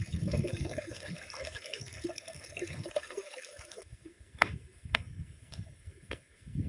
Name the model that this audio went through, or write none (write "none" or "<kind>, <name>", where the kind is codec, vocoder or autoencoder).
codec, SNAC